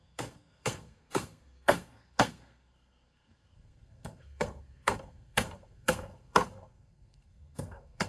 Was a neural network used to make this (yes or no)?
yes